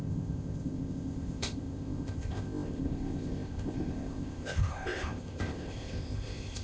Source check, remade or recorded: remade